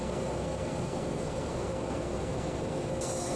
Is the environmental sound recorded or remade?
remade